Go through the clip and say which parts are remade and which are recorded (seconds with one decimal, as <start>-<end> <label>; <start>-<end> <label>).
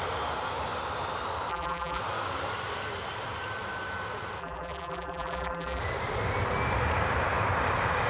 0.0-1.5 recorded; 1.5-2.0 remade; 2.0-4.4 recorded; 4.4-5.8 remade; 5.8-8.1 recorded